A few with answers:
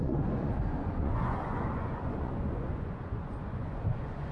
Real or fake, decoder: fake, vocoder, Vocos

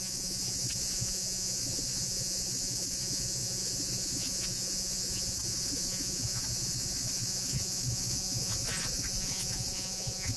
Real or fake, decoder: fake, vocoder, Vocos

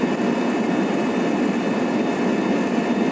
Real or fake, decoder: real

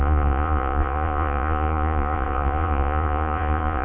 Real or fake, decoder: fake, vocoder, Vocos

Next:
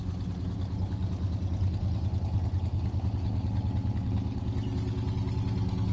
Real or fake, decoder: real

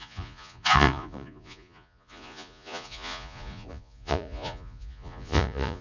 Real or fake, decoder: fake, vocoder, Vocos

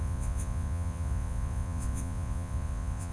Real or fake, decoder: fake, vocoder, Vocos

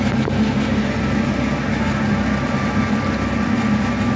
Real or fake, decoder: real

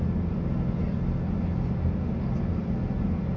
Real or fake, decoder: real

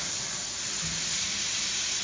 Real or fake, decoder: real